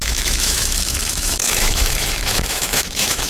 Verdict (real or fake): fake